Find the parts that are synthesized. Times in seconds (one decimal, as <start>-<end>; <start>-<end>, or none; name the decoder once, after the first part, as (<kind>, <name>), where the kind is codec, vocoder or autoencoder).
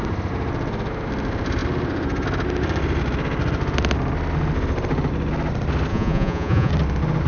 5.9-6.7 (vocoder, Vocos)